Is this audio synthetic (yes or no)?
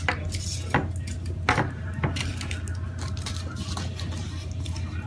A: no